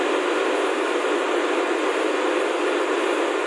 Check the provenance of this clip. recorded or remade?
recorded